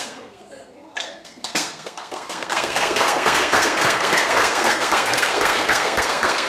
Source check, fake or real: fake